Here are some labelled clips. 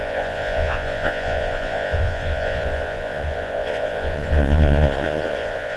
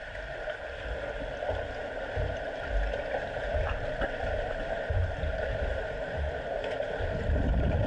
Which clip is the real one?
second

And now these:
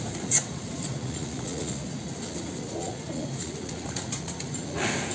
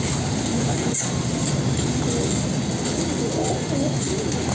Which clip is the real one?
second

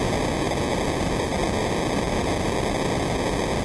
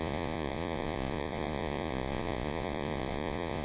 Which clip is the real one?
first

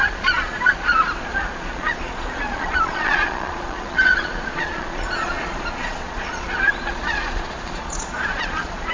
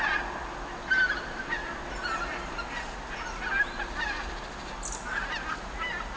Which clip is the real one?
second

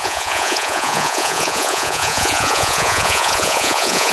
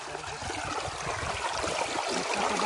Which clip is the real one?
second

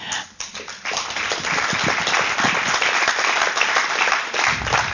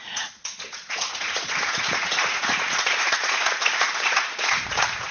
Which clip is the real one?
first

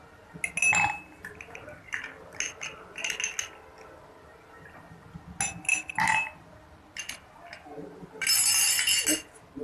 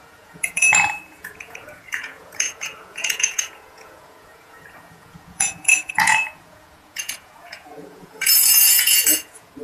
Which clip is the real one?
first